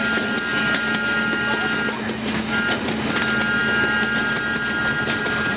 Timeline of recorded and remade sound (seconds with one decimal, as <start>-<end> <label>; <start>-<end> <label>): 0.0-5.6 recorded